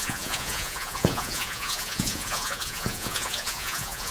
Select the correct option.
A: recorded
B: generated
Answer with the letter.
B